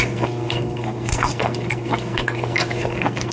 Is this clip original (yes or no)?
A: no